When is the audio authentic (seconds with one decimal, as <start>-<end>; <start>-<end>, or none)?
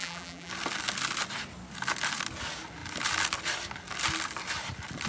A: 0.5-5.1